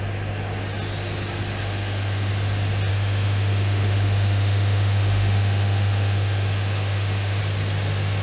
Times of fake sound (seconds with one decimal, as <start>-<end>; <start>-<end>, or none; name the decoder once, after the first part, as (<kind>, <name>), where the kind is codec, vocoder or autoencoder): 1.6-2.3 (autoencoder, DAC-VAE); 2.9-7.4